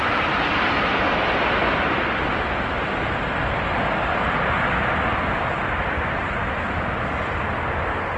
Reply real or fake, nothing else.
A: real